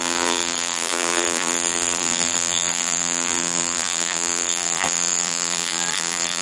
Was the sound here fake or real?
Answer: fake